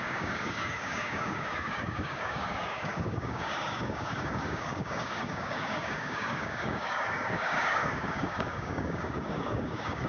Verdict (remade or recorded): remade